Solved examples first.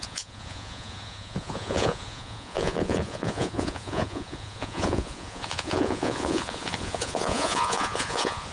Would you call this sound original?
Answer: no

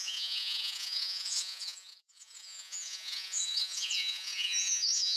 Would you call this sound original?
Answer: no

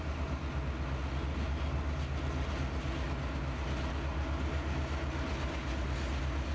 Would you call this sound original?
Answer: yes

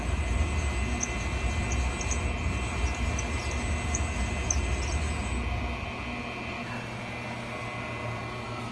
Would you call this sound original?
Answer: yes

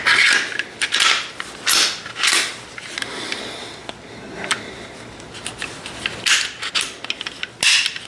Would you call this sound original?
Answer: yes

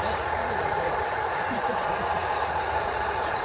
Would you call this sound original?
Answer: no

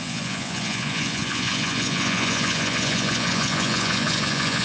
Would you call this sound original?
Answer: no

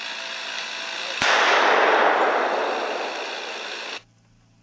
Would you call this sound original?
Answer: yes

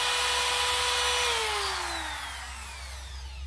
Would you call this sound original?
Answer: yes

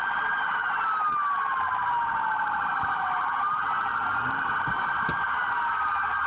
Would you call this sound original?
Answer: yes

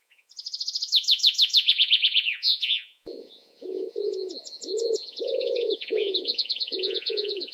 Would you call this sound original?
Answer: no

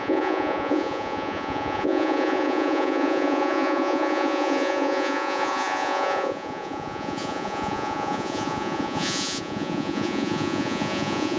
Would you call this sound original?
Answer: no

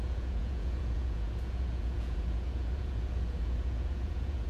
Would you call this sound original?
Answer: no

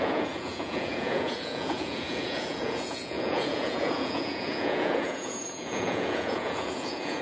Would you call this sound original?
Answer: no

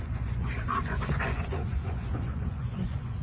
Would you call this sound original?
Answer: no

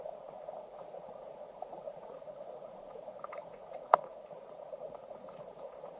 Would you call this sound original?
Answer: no